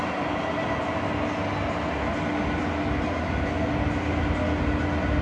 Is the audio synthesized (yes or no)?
no